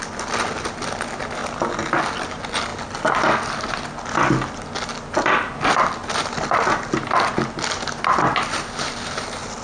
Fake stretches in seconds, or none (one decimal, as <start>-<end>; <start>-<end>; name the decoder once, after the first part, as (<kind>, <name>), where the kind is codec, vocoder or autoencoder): none